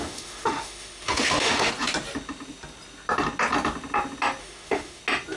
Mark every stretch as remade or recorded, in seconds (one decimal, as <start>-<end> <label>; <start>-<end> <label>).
0.0-1.7 remade; 1.7-4.4 recorded; 4.4-5.0 remade; 5.0-5.4 recorded